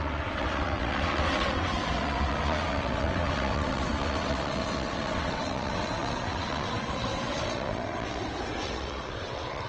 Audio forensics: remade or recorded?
remade